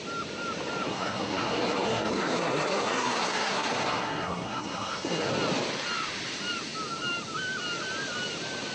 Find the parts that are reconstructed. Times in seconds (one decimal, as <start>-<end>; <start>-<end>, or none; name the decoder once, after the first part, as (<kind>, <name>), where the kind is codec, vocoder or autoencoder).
0.9-5.3 (codec, SNAC)